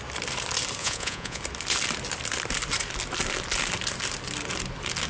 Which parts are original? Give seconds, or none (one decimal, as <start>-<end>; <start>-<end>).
0.0-0.8; 1.4-5.1